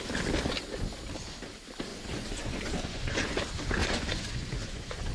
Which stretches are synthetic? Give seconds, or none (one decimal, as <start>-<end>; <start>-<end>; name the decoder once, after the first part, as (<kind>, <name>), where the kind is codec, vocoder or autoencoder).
1.9-3.4 (vocoder, Vocos); 3.8-5.1